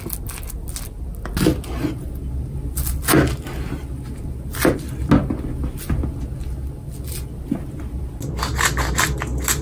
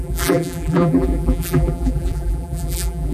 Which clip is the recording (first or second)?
first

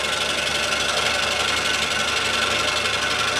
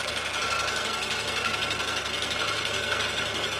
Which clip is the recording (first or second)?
first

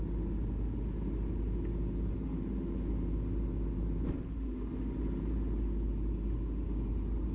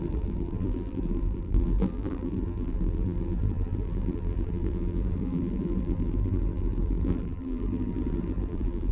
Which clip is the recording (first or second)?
first